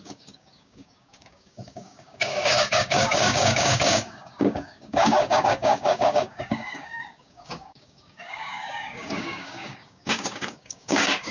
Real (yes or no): no